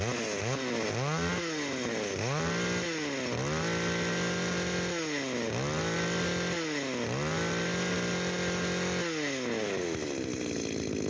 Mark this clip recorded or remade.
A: recorded